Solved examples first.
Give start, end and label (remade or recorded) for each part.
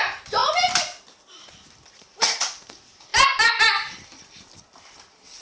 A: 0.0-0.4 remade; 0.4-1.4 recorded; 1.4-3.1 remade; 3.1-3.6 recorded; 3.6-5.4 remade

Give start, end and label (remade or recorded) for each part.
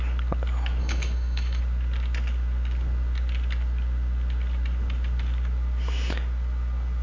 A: 0.0-0.8 recorded; 0.8-1.6 remade; 1.6-7.0 recorded